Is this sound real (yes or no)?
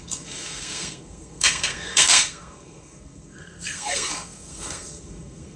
no